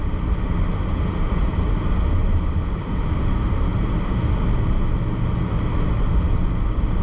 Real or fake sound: real